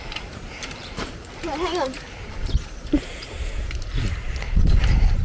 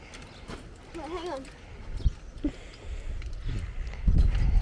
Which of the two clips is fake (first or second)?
first